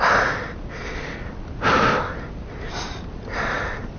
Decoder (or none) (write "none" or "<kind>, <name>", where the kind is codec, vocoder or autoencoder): none